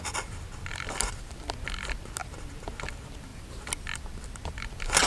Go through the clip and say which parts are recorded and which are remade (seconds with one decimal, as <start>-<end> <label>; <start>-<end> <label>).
0.0-0.7 recorded; 0.7-1.2 remade; 1.2-3.3 recorded; 3.3-4.0 remade; 4.0-5.1 recorded